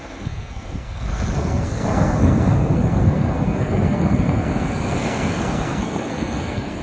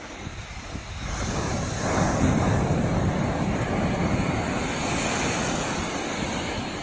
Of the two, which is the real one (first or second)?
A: second